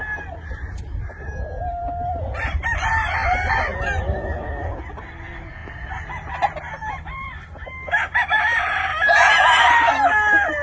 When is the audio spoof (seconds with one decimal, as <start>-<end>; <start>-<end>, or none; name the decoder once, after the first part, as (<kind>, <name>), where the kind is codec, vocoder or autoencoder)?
8.9-9.6 (vocoder, Vocos)